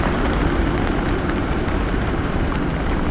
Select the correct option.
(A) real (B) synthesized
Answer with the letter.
B